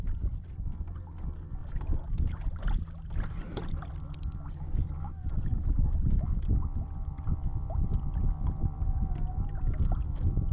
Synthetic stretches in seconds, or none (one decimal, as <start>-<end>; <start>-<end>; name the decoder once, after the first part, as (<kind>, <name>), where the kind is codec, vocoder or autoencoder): 1.6-5.3 (vocoder, BigVGAN v2); 8.2-9.3